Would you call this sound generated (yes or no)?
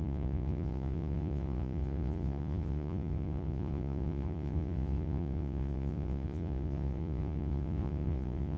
yes